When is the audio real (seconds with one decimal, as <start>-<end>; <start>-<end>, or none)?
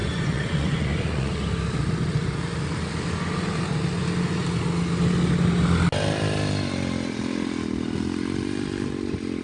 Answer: 1.4-9.4